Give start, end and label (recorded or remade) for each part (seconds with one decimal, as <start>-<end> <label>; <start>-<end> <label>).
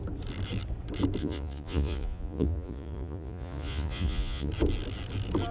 0.0-1.2 recorded; 1.2-4.5 remade; 4.5-5.5 recorded